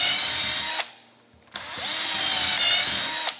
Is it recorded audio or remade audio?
recorded